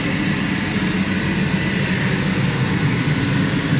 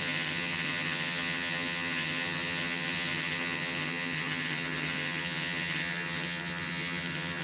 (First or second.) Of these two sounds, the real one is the first